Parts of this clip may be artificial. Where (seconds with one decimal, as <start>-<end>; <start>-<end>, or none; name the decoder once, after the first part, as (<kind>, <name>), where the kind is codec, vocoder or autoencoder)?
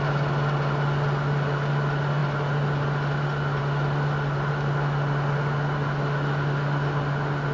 none